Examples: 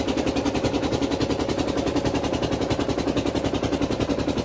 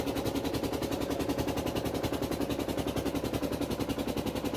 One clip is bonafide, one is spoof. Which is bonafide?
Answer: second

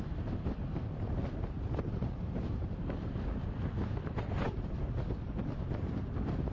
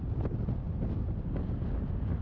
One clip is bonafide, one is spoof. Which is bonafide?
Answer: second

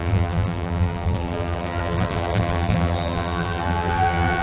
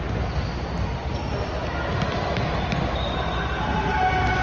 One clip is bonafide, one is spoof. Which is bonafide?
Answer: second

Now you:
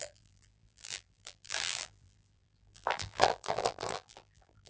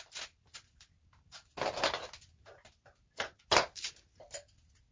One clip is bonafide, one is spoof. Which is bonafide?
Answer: second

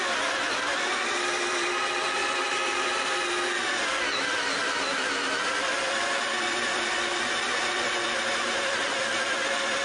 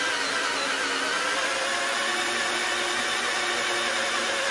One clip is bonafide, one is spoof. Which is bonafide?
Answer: second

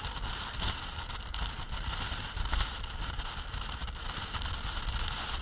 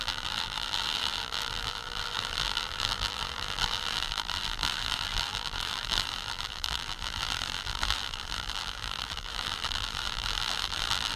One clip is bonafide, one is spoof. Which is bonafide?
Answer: first